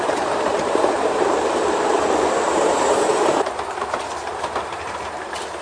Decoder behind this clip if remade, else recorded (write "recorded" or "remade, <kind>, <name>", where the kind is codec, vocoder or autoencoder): remade, vocoder, BigVGAN v2